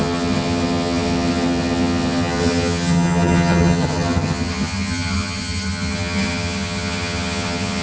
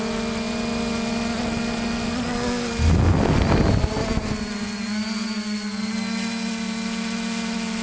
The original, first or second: second